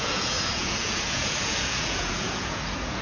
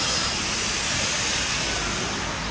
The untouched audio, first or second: second